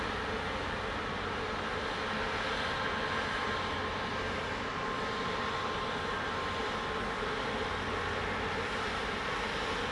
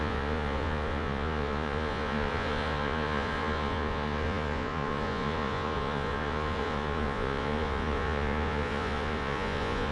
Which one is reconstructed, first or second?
second